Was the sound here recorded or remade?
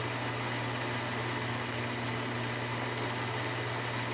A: recorded